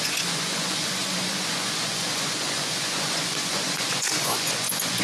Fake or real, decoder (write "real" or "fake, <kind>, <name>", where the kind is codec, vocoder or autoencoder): fake, vocoder, Vocos